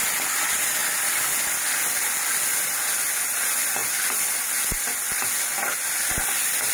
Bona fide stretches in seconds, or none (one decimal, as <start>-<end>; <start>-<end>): 0.0-0.8; 2.2-3.8; 4.7-6.7